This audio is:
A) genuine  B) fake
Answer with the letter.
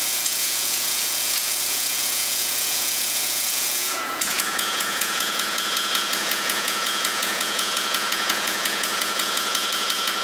B